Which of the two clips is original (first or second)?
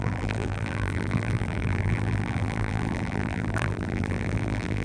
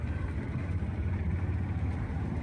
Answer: second